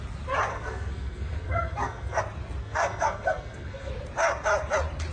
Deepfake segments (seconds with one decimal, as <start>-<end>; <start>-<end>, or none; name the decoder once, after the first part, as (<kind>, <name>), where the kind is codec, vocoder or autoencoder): 0.5-2.2 (codec, SNAC); 2.6-3.9